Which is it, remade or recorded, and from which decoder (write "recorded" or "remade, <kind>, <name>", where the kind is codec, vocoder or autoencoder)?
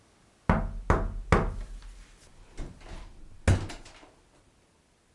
recorded